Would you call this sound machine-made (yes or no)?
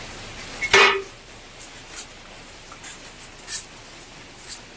no